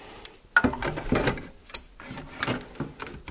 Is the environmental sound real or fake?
real